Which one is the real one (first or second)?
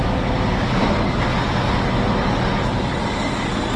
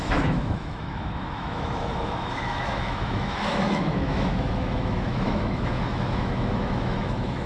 first